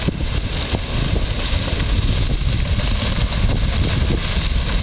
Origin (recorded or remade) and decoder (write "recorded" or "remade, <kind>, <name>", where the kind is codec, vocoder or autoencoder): recorded